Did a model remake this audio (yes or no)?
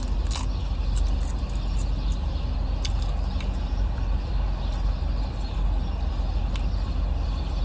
no